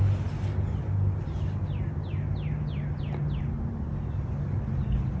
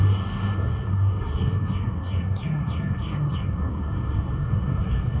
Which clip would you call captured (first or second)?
first